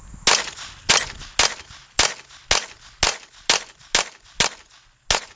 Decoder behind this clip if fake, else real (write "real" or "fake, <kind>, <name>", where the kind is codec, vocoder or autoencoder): real